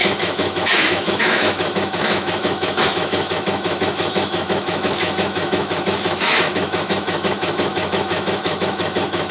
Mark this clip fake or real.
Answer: fake